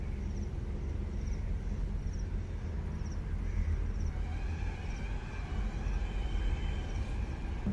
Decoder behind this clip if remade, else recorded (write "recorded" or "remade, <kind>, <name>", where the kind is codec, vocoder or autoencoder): recorded